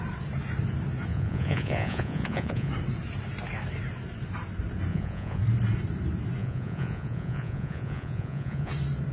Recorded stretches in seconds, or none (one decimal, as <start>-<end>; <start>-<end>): 0.0-1.1; 2.7-4.9; 5.4-6.4; 8.7-9.1